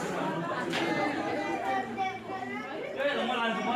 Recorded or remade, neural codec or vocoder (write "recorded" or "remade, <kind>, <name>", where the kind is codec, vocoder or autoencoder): remade, vocoder, BigVGAN v2